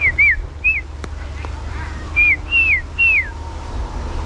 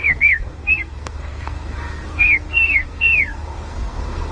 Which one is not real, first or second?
second